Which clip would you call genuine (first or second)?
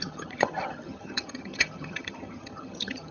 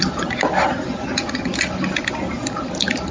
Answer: second